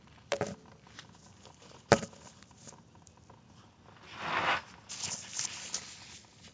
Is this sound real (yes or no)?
yes